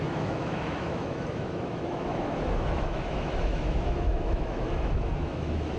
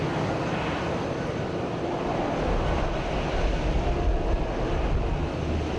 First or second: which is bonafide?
second